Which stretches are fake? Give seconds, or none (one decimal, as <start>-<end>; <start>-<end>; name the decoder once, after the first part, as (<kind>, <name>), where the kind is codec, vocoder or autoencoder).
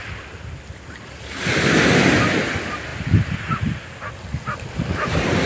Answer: none